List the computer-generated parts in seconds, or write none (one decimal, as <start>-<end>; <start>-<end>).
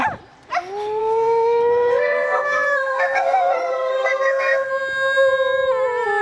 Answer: 1.0-4.7